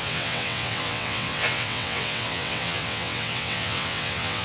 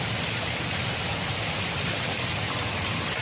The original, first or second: second